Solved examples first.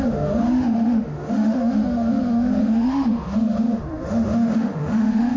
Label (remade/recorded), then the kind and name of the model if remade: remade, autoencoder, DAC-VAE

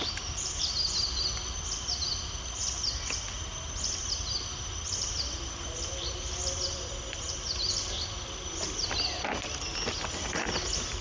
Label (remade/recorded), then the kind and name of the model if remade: recorded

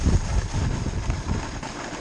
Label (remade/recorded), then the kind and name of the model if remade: recorded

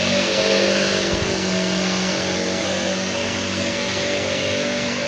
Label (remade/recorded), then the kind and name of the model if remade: remade, codec, SNAC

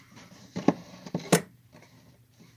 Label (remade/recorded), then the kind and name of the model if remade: remade, vocoder, BigVGAN v2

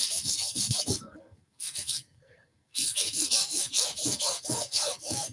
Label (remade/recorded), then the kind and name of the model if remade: remade, codec, SNAC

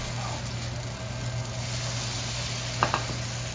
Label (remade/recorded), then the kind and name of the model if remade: recorded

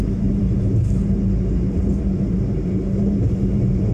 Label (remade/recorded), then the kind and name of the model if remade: remade, vocoder, BigVGAN v2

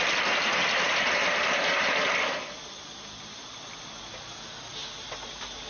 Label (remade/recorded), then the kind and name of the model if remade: recorded